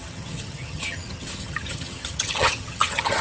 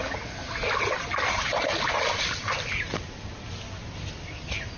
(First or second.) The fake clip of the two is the first